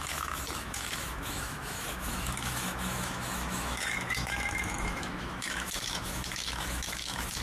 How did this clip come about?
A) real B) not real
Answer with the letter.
B